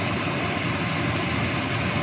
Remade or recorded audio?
recorded